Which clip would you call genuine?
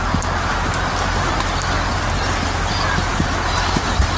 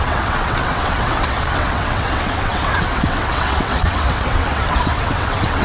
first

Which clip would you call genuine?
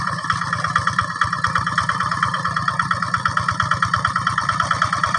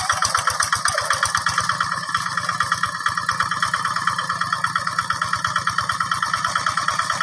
second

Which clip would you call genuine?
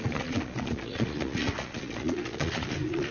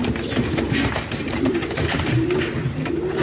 second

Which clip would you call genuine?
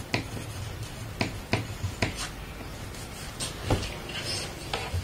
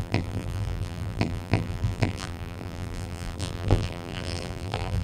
first